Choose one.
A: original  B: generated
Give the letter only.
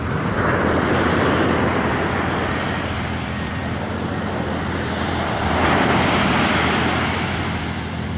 B